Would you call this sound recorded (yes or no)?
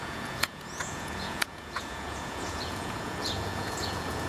no